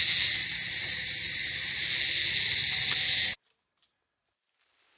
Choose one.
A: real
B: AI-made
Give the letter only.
A